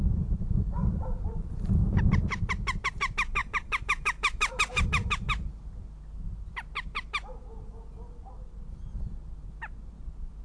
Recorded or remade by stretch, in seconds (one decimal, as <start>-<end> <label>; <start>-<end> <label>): 0.0-0.8 recorded; 0.8-2.0 remade; 2.0-3.4 recorded; 3.4-4.8 remade; 4.8-10.4 recorded